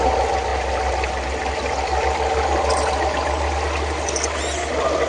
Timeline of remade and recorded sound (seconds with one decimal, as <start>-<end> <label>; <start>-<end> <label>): 0.0-5.1 recorded